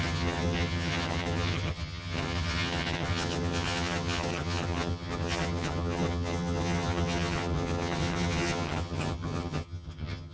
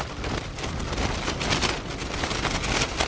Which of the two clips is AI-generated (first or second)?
first